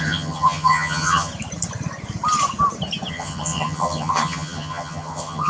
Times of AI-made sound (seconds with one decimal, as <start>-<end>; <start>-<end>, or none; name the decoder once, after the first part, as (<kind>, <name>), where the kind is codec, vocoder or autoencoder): 0.0-1.3 (vocoder, HiFi-GAN); 3.1-5.5